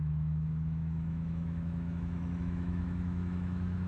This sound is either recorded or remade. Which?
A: remade